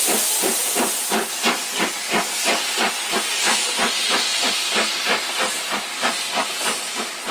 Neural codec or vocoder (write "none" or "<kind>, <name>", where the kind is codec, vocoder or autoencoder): vocoder, BigVGAN v2